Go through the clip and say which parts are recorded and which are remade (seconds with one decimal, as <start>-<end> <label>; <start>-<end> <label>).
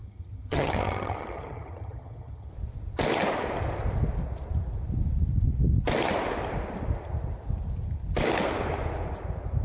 0.0-2.5 remade; 2.5-9.6 recorded